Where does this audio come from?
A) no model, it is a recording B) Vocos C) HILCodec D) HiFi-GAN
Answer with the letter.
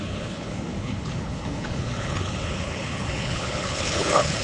C